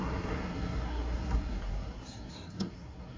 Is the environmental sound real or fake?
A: fake